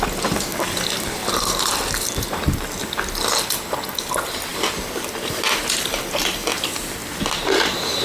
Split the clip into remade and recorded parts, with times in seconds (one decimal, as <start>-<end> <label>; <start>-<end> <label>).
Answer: 0.0-0.5 recorded; 0.5-1.9 remade; 1.9-4.5 recorded; 4.5-6.2 remade; 6.2-8.0 recorded